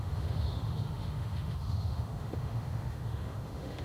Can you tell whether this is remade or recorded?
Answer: remade